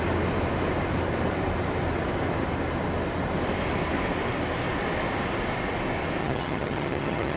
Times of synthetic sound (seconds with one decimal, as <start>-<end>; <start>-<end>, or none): 6.2-7.4